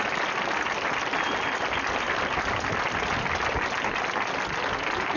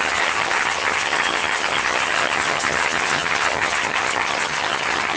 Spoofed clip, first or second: second